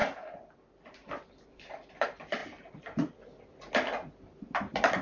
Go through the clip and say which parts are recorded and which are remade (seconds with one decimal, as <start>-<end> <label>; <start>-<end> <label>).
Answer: 0.0-1.1 recorded; 1.1-2.4 remade; 2.4-4.4 recorded; 4.4-5.0 remade